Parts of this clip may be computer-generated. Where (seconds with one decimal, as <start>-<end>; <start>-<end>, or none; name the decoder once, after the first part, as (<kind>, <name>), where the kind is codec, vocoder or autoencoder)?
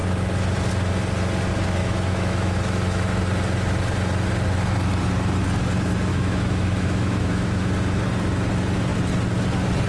1.8-3.2 (autoencoder, DAC-VAE); 6.1-7.7